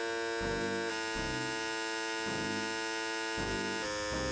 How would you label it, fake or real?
real